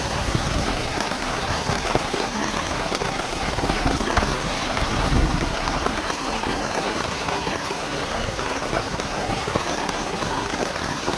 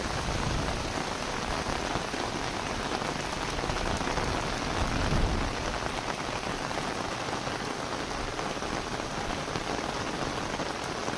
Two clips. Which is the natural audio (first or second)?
second